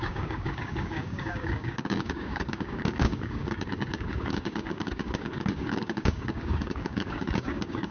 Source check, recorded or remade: remade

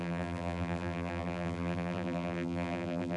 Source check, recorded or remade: remade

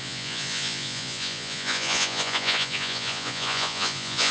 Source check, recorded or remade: remade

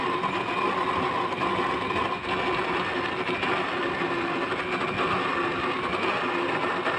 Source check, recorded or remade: recorded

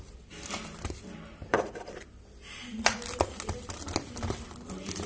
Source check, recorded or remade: recorded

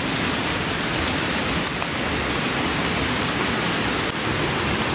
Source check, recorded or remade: remade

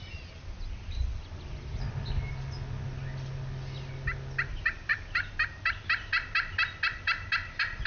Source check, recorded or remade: recorded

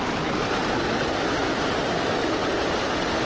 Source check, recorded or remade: recorded